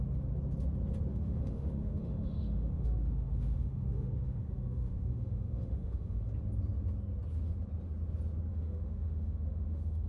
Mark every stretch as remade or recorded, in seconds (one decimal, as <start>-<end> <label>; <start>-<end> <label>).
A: 0.0-1.1 recorded; 1.1-6.2 remade; 6.2-8.5 recorded; 8.5-10.1 remade